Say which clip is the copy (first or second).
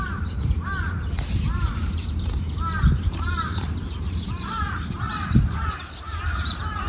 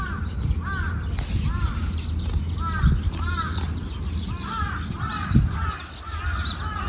first